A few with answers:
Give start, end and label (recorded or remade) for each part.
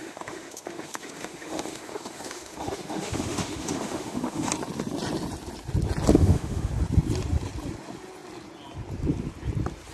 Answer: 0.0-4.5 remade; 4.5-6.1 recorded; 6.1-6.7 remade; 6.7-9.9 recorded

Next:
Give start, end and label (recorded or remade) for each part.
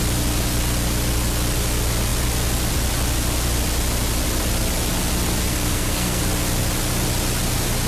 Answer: 0.0-5.5 recorded; 5.5-6.2 remade; 6.2-7.9 recorded